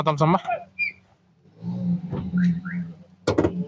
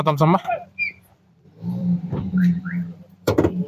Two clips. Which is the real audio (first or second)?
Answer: first